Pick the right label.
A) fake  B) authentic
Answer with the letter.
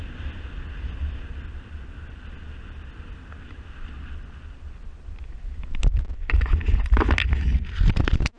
B